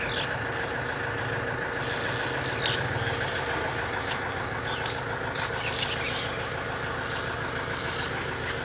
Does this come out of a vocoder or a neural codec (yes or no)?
no